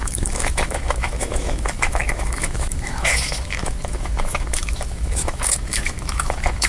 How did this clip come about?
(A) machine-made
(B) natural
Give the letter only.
A